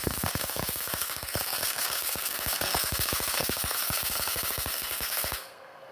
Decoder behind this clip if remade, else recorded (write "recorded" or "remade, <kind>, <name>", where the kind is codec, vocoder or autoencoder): remade, codec, SNAC